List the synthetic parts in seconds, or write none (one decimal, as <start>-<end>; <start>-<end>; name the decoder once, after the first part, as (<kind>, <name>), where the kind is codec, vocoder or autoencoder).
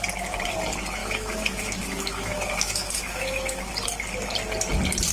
1.0-3.7 (autoencoder, DAC-VAE)